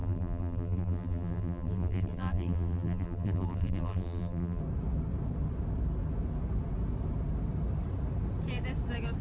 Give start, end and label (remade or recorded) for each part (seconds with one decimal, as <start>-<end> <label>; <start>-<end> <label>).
0.0-4.6 remade; 4.6-9.2 recorded